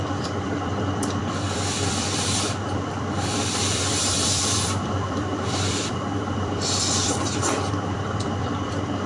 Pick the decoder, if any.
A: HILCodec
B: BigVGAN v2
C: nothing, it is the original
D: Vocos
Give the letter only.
B